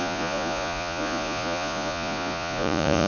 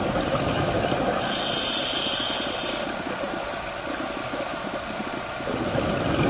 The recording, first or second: second